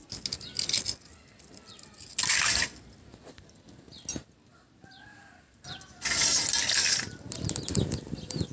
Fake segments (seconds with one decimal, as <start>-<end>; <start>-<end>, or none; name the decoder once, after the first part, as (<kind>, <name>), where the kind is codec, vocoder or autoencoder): none